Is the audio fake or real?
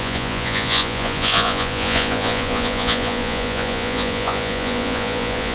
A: fake